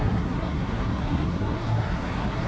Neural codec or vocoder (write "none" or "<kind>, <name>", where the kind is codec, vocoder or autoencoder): codec, SNAC